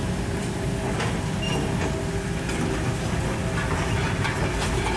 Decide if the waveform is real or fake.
real